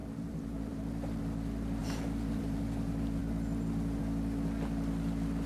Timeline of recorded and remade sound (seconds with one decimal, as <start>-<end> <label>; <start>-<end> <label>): 0.0-1.2 remade; 1.2-1.8 recorded; 1.8-2.6 remade; 2.6-5.5 recorded